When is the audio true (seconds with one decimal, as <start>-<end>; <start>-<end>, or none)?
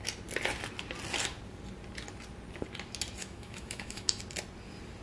0.0-3.2; 4.2-5.0